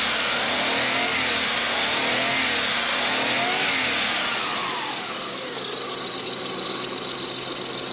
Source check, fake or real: real